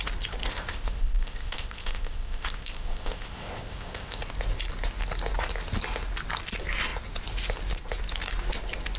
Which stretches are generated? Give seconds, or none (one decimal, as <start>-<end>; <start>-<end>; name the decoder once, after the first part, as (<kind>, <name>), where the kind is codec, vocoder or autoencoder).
0.5-4.2 (codec, ZipCodec)